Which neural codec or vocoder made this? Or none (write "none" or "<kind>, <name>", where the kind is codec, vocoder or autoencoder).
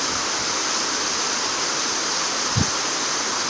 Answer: none